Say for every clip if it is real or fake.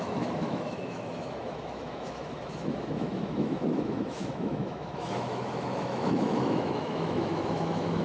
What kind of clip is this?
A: fake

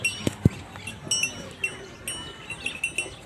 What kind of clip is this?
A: real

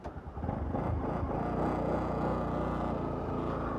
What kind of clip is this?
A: real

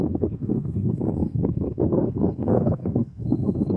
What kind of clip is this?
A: fake